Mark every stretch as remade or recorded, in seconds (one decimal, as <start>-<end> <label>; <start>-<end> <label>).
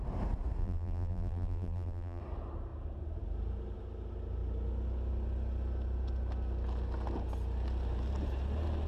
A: 0.0-0.6 recorded; 0.6-2.2 remade; 2.2-8.9 recorded